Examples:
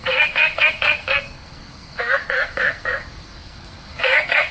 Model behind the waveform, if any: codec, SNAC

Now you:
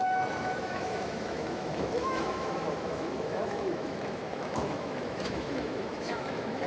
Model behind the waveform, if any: autoencoder, DAC-VAE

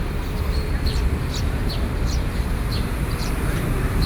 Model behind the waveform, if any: vocoder, BigVGAN v2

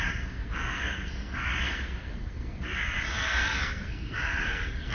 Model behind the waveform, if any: codec, SNAC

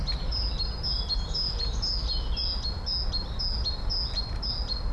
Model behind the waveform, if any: none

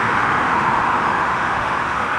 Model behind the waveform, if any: autoencoder, DAC-VAE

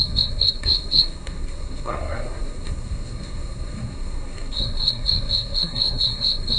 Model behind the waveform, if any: codec, SNAC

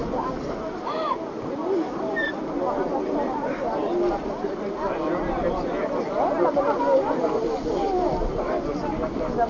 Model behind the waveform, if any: none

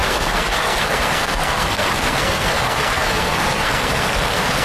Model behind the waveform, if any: codec, SNAC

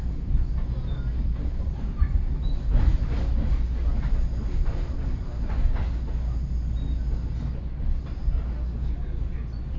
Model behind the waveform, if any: none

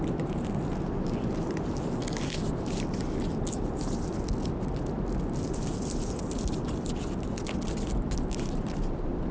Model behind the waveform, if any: none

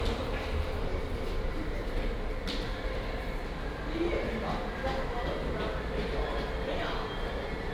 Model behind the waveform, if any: none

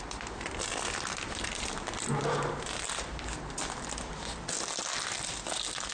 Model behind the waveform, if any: none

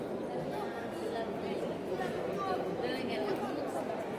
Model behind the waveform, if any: none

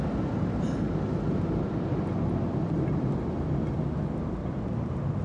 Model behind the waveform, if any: none